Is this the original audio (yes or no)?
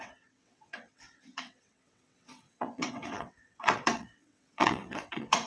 no